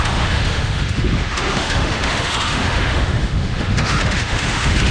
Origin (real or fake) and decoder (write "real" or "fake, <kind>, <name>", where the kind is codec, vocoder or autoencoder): fake, autoencoder, DAC-VAE